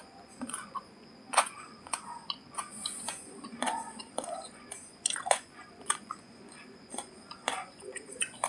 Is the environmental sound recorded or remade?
remade